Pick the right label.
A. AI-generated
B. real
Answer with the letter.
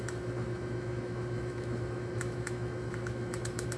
A